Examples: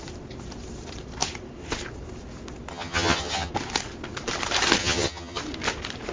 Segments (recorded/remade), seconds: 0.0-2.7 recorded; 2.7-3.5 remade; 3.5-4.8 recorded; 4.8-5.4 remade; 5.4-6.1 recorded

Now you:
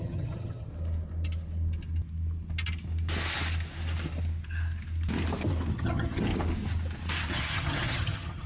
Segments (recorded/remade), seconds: 0.0-0.7 remade; 0.7-5.7 recorded; 5.7-6.3 remade; 6.3-7.3 recorded; 7.3-8.5 remade

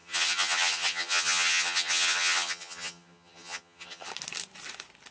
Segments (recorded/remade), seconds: 0.0-4.1 remade; 4.1-5.1 recorded